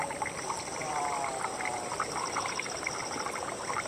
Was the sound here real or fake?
fake